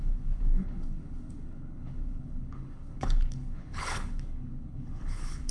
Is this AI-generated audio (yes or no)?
yes